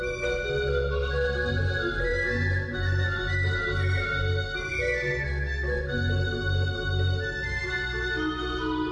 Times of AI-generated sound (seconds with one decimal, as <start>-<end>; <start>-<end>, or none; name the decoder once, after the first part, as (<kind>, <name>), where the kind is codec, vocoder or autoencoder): none